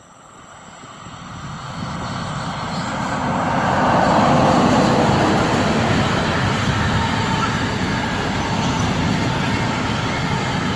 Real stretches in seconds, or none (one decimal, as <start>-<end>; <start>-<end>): 0.0-10.8